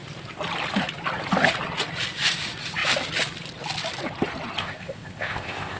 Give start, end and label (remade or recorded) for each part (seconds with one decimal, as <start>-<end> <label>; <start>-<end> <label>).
0.0-4.6 recorded; 4.6-5.8 remade